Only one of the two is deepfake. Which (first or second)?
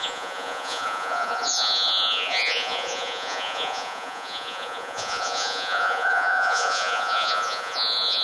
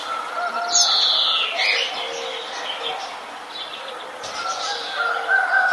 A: first